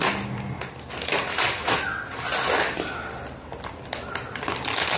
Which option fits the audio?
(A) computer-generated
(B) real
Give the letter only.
B